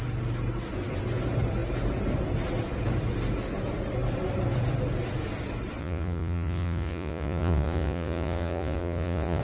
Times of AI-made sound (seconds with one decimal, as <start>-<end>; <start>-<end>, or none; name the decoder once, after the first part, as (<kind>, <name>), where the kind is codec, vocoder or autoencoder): 5.8-9.4 (vocoder, Vocos)